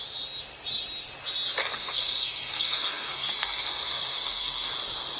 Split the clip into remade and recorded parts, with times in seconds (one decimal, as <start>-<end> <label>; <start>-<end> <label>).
0.0-1.6 recorded; 1.6-4.7 remade; 4.7-5.2 recorded